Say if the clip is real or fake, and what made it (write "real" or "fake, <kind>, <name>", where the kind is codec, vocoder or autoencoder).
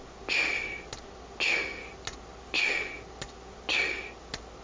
real